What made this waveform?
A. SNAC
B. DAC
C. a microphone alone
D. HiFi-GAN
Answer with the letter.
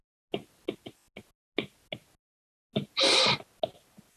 C